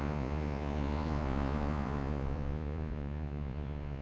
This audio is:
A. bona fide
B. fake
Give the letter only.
B